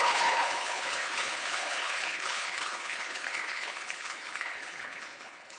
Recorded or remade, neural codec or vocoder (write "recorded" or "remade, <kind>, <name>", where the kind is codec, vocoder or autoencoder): remade, codec, HILCodec